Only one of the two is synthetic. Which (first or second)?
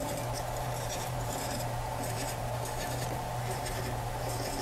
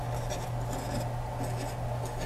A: first